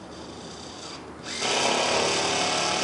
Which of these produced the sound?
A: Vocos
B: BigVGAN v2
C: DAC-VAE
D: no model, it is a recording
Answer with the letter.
D